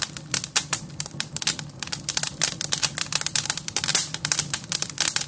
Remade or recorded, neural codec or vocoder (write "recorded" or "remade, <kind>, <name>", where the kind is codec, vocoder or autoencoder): remade, vocoder, BigVGAN v2